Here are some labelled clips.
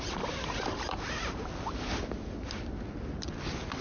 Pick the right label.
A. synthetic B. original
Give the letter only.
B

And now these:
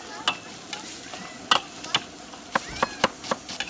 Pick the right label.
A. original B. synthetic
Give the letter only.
A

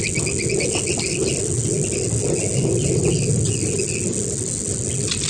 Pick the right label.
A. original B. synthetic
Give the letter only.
A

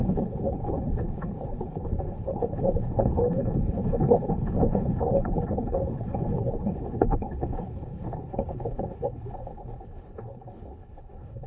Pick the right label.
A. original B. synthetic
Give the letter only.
B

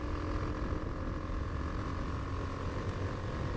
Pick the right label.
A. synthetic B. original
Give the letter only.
B